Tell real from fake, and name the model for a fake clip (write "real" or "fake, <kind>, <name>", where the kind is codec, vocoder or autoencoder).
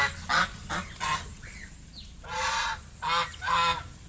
real